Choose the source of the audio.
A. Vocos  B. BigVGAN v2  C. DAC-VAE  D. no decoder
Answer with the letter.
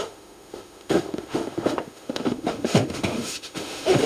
C